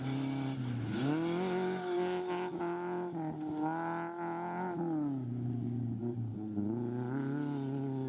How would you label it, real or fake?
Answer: real